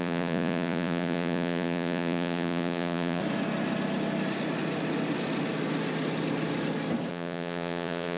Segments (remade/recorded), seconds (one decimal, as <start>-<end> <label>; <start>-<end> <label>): 0.0-3.2 remade; 3.2-7.1 recorded; 7.1-8.2 remade